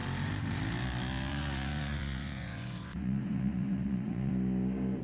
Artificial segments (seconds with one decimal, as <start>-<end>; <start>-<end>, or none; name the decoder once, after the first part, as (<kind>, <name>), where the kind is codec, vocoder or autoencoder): 1.3-4.3 (vocoder, Vocos)